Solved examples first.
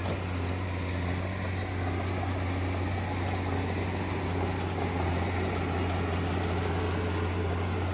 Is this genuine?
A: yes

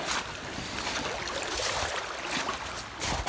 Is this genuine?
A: yes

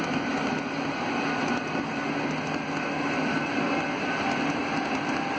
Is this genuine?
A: yes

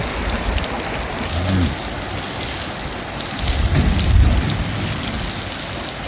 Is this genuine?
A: yes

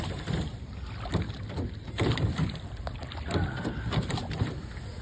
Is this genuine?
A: no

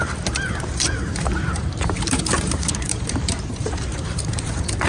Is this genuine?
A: no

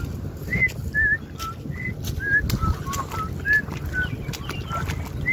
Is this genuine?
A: yes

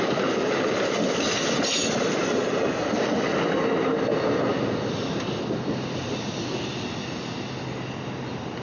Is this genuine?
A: yes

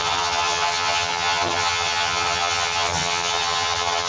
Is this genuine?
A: no